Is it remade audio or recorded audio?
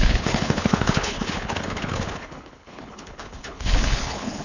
remade